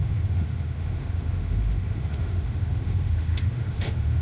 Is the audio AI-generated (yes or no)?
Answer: yes